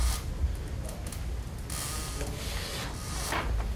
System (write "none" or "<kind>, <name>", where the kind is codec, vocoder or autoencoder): none